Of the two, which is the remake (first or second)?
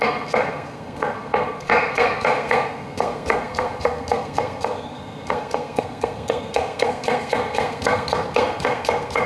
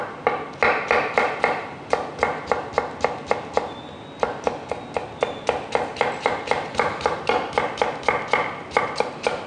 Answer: first